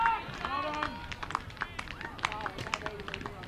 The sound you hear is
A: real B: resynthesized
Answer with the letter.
A